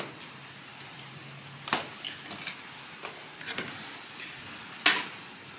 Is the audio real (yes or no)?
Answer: yes